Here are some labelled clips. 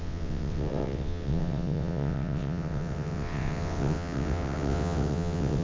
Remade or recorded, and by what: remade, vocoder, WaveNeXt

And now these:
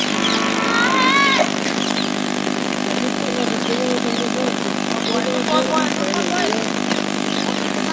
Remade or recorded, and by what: recorded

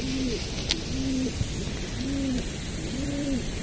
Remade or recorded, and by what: recorded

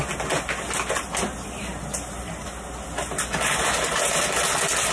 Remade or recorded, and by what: recorded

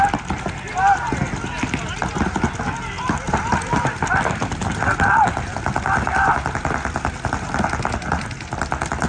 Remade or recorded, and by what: recorded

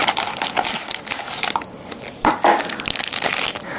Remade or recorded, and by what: recorded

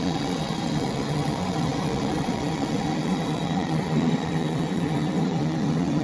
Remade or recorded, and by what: remade, vocoder, WaveNeXt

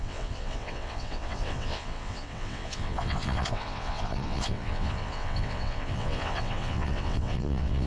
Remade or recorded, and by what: remade, vocoder, WaveNeXt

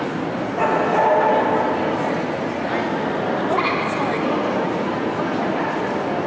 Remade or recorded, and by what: recorded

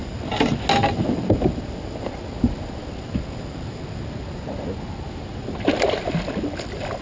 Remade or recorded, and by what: recorded